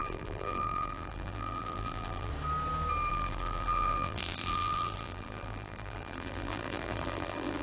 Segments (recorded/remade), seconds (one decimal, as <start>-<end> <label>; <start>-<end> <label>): 0.0-2.3 remade; 2.3-3.1 recorded; 3.1-7.6 remade